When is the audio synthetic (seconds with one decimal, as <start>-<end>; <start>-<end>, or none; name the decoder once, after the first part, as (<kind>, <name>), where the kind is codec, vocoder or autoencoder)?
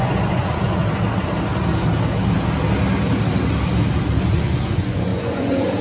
0.0-0.8 (vocoder, Vocos); 4.3-5.8